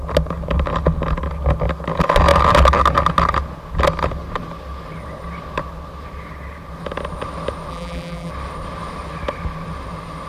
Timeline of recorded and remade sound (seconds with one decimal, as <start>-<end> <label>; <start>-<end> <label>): 0.0-7.7 recorded; 7.7-8.3 remade; 8.3-10.3 recorded